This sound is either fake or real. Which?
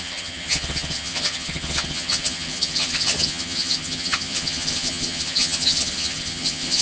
fake